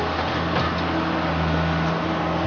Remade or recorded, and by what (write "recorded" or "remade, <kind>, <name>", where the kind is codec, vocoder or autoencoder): recorded